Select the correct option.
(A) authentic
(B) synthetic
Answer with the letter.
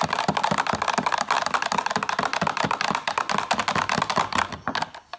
A